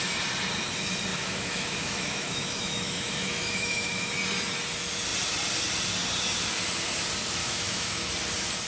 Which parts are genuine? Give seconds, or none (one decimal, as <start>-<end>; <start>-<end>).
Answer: 0.0-1.1; 4.1-7.4; 8.1-8.7